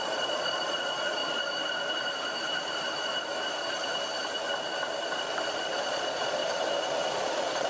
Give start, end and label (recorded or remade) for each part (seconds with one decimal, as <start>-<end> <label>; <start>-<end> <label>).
0.0-1.2 remade; 1.2-5.8 recorded; 5.8-6.4 remade; 6.4-7.2 recorded; 7.2-7.7 remade